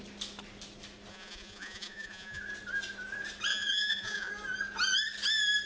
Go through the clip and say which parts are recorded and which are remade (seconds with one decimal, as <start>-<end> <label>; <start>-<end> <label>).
0.0-1.1 recorded; 1.1-2.4 remade; 2.4-3.5 recorded; 3.5-4.3 remade; 4.3-5.7 recorded